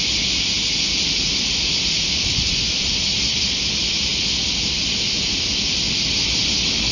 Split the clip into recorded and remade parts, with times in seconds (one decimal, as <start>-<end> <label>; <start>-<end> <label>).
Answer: 0.0-6.9 recorded